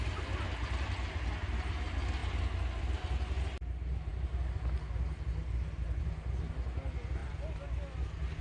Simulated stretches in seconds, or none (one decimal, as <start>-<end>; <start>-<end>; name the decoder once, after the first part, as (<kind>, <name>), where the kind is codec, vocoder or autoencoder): none